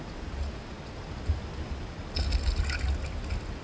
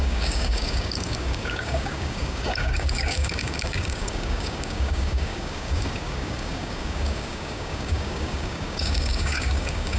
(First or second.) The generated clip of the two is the second